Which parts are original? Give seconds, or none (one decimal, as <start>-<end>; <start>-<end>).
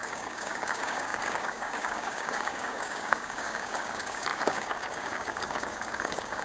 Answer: none